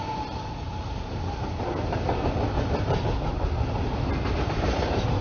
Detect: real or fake real